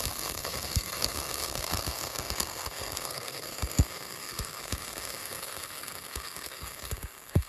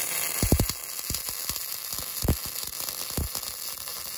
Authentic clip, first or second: second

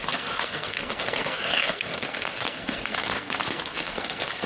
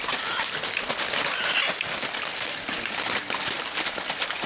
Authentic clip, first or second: second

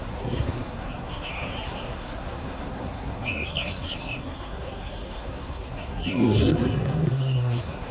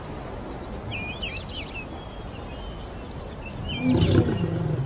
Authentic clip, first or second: second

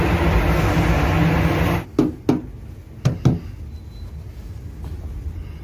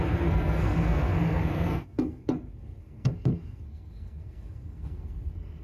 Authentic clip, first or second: first